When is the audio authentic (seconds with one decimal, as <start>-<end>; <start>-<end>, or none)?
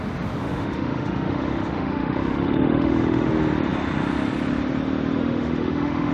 0.0-0.4; 3.3-5.2